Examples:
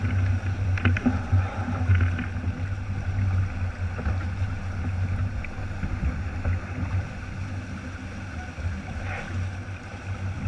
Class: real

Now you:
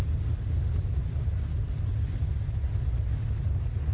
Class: real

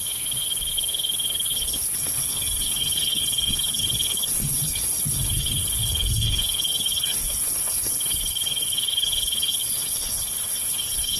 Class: fake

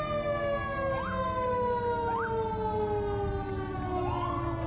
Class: real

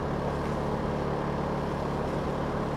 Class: real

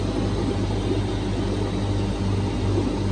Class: real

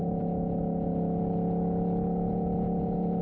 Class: real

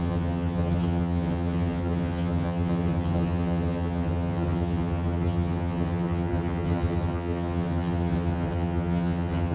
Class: fake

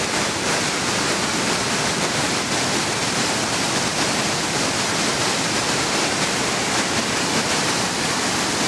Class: fake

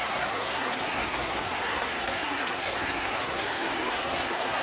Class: fake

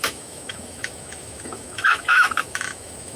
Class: fake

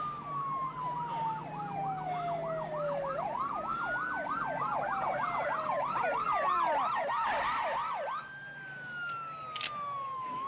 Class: real